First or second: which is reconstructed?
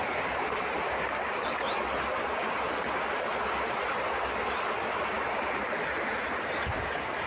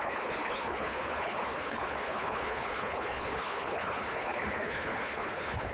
second